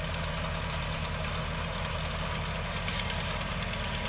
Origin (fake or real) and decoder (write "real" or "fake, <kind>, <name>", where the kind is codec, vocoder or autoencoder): real